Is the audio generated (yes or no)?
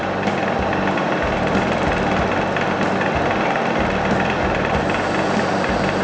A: no